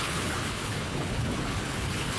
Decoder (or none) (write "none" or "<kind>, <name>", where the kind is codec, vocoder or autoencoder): codec, HILCodec